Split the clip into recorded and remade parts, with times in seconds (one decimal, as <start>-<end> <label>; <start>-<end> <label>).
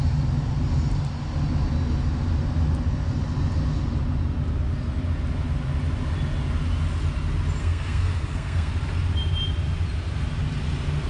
0.0-7.6 recorded; 7.6-8.7 remade; 8.7-11.1 recorded